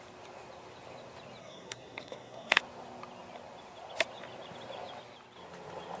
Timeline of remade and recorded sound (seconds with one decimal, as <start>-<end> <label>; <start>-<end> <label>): 0.0-1.4 recorded; 1.4-2.6 remade; 2.6-6.0 recorded